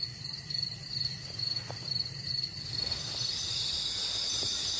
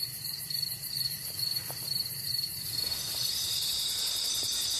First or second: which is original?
first